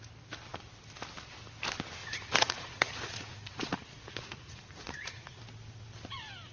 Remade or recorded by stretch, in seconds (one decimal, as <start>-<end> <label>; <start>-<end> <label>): 0.0-2.0 recorded; 2.0-5.4 remade; 5.4-6.5 recorded